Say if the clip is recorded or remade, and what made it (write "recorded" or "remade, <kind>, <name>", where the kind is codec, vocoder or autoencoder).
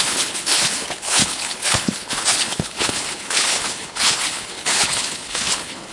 remade, codec, HILCodec